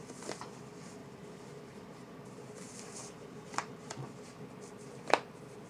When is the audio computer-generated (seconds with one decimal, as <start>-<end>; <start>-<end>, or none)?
1.0-2.2; 3.0-3.9